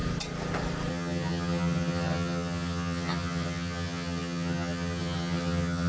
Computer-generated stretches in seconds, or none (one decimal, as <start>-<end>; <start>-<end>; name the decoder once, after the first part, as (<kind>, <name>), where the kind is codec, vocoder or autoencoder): 0.9-5.9 (vocoder, HiFi-GAN)